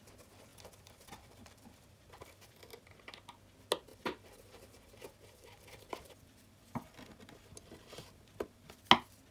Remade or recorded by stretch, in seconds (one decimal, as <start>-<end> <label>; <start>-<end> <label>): 0.0-0.5 recorded; 0.5-3.1 remade; 3.1-3.9 recorded; 3.9-8.8 remade; 8.8-9.3 recorded